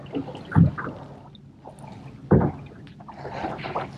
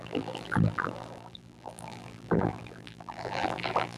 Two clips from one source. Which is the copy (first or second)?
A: second